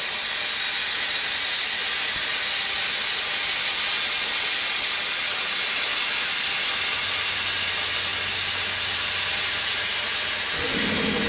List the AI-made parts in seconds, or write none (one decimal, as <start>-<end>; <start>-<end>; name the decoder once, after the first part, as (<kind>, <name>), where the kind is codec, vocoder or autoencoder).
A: none